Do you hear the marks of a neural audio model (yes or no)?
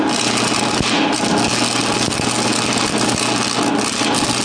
no